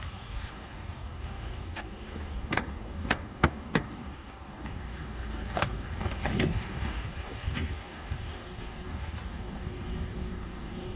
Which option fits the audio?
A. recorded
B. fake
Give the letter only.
B